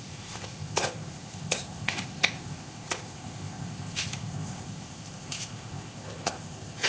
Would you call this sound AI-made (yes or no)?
yes